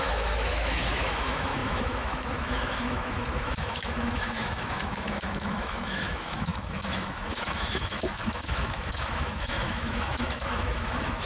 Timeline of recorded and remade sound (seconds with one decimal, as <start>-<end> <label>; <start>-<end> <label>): 0.0-11.3 remade